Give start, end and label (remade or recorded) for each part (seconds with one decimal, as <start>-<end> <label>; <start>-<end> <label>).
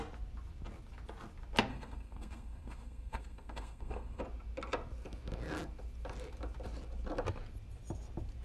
0.0-1.7 recorded; 1.7-4.2 remade; 4.2-8.4 recorded